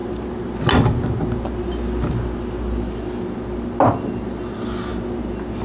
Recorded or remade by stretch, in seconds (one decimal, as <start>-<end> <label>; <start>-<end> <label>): 0.0-5.6 recorded